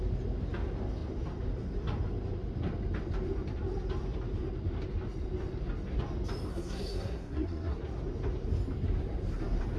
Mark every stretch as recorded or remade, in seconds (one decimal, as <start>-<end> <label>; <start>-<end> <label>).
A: 0.0-6.5 recorded; 6.5-7.8 remade; 7.8-9.8 recorded